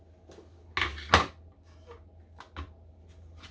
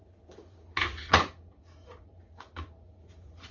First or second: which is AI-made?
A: second